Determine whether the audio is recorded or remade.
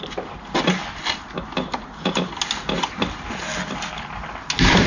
recorded